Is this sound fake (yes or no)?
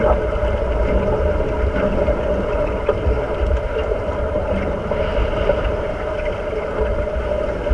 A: no